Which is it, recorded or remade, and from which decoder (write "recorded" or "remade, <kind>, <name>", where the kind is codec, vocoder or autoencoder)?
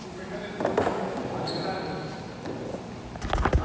recorded